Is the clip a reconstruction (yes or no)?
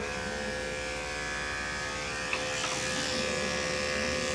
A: no